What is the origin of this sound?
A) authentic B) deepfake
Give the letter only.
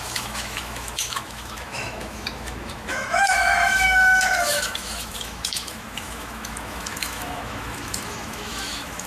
B